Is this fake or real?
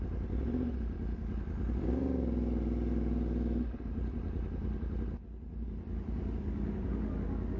real